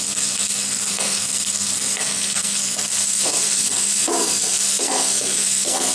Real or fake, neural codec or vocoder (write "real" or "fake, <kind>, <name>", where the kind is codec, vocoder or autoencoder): fake, codec, SNAC